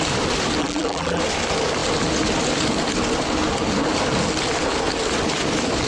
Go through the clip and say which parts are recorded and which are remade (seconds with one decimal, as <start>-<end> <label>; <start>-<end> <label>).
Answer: 0.0-0.6 recorded; 0.6-1.2 remade; 1.2-5.9 recorded